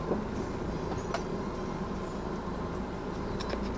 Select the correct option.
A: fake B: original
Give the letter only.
B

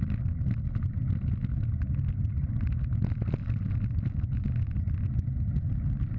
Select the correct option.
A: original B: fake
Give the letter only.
A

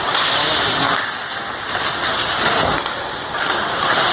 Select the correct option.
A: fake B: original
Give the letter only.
B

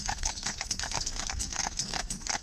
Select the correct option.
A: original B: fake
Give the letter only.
B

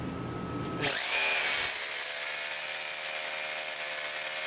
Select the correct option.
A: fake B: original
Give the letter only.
B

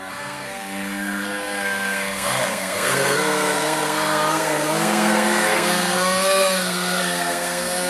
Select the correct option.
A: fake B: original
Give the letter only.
A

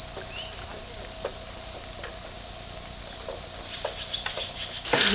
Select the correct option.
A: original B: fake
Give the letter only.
A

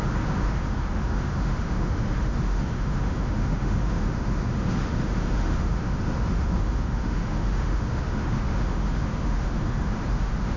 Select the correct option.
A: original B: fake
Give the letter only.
B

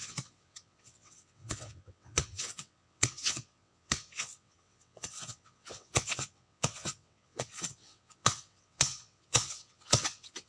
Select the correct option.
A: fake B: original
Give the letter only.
A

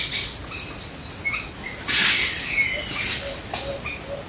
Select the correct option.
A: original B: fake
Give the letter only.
A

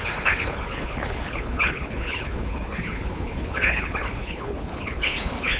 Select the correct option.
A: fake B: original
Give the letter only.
A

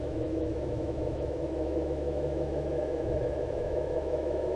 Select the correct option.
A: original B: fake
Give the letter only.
B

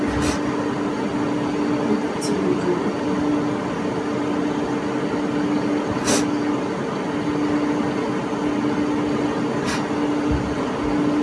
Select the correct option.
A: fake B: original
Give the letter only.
B